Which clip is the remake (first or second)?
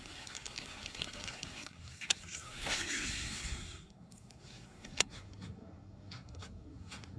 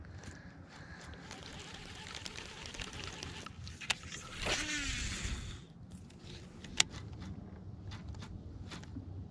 first